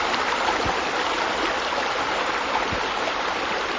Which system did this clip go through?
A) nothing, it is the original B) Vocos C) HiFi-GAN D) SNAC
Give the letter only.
A